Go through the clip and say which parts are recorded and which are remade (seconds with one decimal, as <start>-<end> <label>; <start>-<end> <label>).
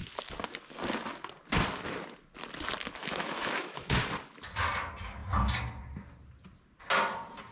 0.0-3.0 recorded; 3.0-4.0 remade; 4.0-7.5 recorded